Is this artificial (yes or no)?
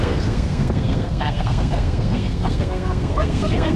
yes